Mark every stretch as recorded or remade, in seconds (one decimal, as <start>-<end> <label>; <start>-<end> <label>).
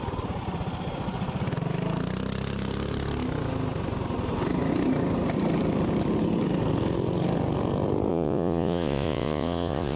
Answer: 0.0-8.1 recorded; 8.1-10.0 remade